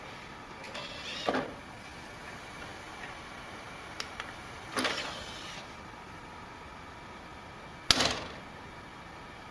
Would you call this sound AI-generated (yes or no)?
no